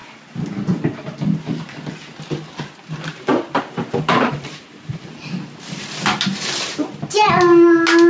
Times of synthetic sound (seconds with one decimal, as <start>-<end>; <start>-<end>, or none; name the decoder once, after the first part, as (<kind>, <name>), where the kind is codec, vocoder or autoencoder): 3.1-5.2 (vocoder, BigVGAN v2); 6.3-6.9